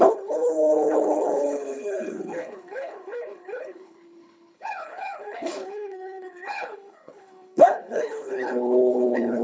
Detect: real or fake fake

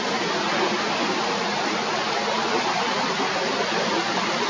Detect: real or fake real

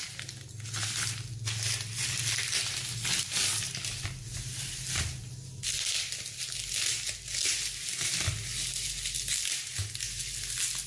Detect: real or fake real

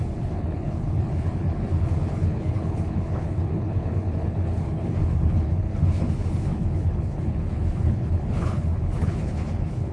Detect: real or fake fake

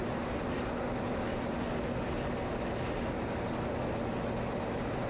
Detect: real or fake real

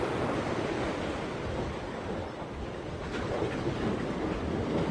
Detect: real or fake real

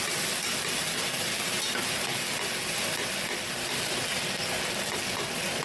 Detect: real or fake real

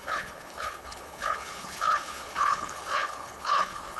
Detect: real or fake fake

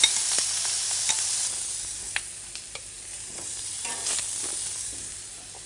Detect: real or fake real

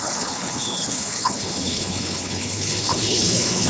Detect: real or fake fake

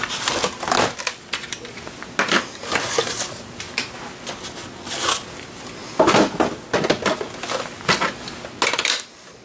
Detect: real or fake real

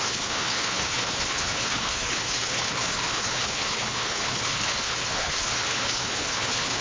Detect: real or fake fake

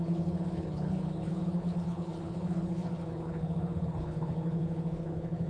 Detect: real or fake fake